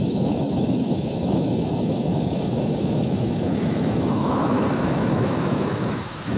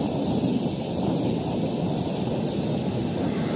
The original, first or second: second